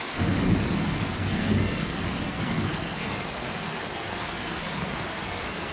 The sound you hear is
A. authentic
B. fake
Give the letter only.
B